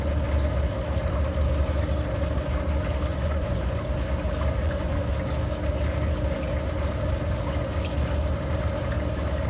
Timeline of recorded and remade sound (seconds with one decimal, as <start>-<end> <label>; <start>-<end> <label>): 0.0-3.1 recorded; 3.1-3.8 remade; 3.8-4.6 recorded; 4.6-5.1 remade; 5.1-9.5 recorded